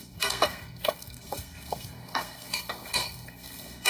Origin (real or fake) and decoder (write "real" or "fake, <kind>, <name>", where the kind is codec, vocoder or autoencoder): fake, codec, SNAC